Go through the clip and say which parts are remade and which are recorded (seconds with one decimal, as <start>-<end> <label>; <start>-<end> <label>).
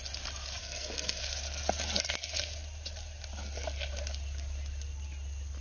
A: 0.0-0.6 recorded; 0.6-1.2 remade; 1.2-5.6 recorded